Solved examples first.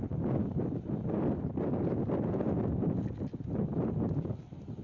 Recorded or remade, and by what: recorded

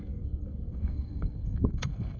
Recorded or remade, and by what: remade, codec, SNAC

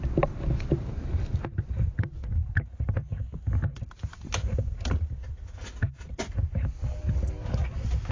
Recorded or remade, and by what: recorded